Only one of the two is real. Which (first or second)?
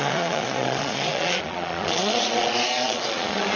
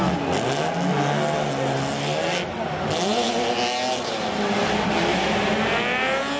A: second